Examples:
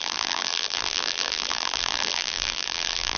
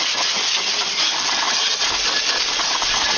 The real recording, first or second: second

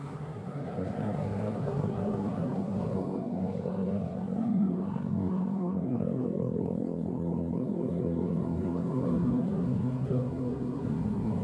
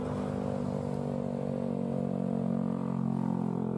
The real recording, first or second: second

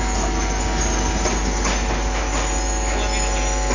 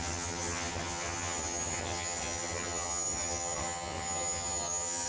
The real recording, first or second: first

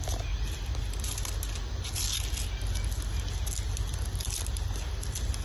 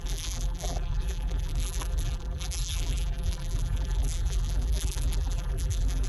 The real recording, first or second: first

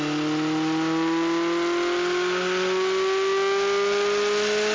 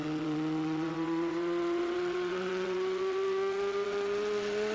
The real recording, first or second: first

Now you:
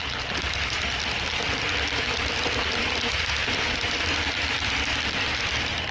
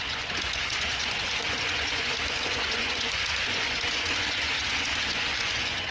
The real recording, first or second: first